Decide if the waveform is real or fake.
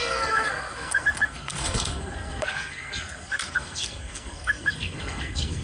fake